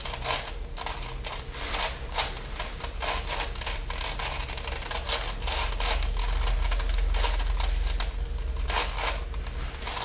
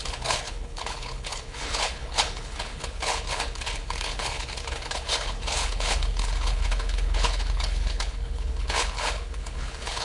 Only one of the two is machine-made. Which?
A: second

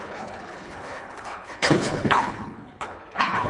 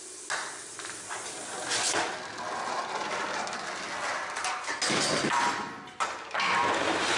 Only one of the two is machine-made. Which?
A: first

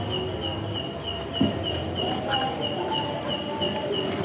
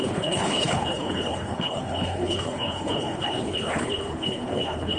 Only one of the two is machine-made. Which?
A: second